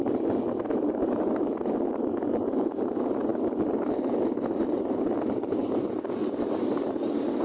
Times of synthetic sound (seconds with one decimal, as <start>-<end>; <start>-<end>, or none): none